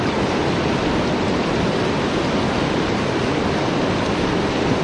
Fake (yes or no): yes